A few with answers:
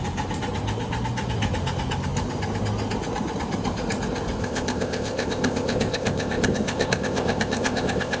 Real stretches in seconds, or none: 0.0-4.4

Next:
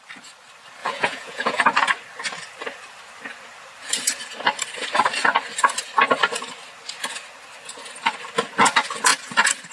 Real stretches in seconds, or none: 0.0-0.8; 1.6-9.7

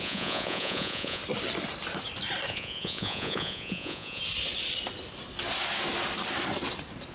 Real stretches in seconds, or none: 1.2-2.5; 4.2-7.1

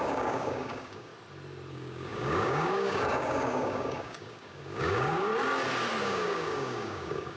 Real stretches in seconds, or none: 1.1-1.7; 5.3-6.0

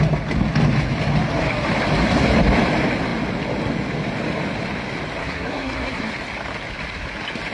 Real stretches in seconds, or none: 0.0-5.2; 6.1-7.5

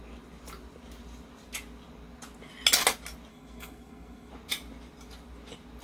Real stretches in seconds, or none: 0.0-3.3; 4.3-5.8

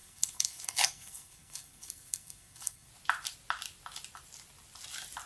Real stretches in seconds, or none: 2.9-5.3

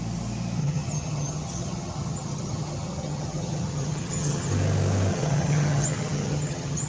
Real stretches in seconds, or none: 0.0-0.6; 4.5-5.1